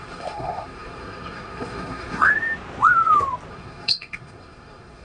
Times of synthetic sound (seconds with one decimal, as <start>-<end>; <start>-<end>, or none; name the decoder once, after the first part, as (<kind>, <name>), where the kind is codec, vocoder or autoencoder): 0.0-2.3 (codec, SNAC); 3.5-5.0